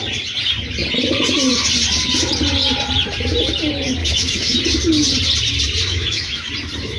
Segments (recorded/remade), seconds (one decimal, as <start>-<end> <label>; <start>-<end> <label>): 0.0-4.0 recorded; 4.0-4.6 remade; 4.6-5.9 recorded; 5.9-6.5 remade; 6.5-7.0 recorded